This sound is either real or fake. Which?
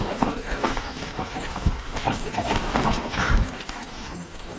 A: fake